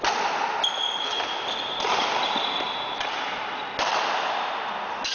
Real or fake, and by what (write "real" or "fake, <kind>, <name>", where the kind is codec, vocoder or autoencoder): real